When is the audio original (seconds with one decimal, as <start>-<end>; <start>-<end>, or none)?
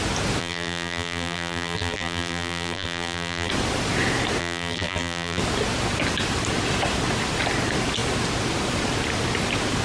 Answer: 0.0-0.4; 3.5-4.4; 5.4-9.8